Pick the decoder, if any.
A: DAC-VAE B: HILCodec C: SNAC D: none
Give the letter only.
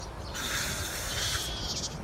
D